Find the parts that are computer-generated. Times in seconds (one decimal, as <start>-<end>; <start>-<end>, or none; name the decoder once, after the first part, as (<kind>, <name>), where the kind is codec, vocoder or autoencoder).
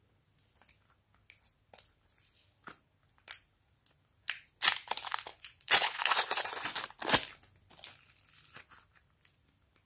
5.3-6.8 (vocoder, Vocos)